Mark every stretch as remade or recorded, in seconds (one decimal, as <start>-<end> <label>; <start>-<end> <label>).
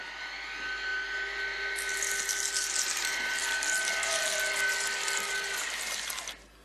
0.0-6.6 recorded